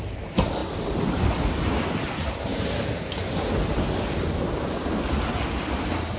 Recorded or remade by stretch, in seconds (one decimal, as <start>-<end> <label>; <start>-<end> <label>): 0.0-6.2 recorded